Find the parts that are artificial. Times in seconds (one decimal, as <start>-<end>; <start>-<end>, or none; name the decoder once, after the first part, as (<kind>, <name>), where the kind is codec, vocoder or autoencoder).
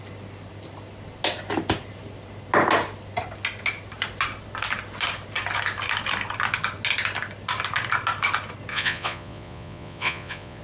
8.7-10.6 (vocoder, Vocos)